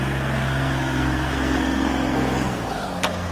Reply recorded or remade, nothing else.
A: remade